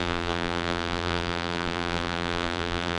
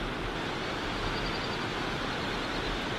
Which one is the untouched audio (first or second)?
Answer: second